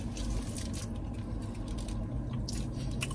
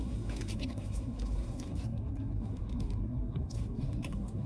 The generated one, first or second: second